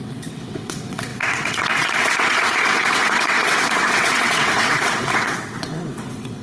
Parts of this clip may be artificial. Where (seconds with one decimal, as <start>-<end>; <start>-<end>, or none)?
0.0-6.4